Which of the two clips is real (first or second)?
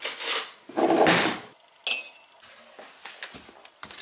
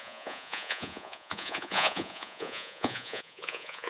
first